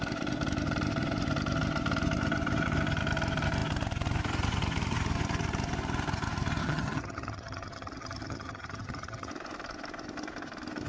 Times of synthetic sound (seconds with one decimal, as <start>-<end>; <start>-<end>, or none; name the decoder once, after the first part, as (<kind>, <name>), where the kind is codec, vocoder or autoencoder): 6.6-9.3 (vocoder, HiFi-GAN)